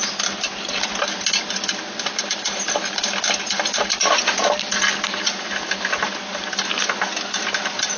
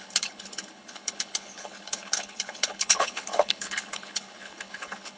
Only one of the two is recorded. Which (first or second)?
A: first